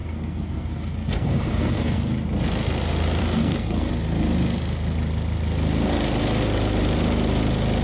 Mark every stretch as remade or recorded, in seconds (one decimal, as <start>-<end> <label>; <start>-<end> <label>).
0.0-2.0 remade; 2.0-3.2 recorded; 3.2-3.9 remade; 3.9-7.8 recorded